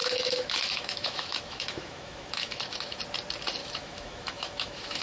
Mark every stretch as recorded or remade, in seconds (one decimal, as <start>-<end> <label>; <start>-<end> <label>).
0.0-3.0 remade; 3.0-3.6 recorded; 3.6-5.0 remade